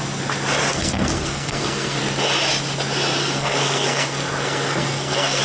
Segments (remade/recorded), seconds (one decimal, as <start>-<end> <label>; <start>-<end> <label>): 0.0-0.7 recorded; 0.7-2.0 remade; 2.0-3.2 recorded; 3.2-5.4 remade